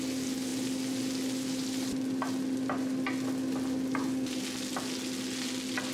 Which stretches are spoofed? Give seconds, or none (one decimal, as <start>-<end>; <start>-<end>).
none